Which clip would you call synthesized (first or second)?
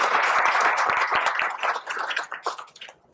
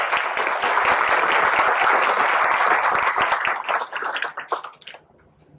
first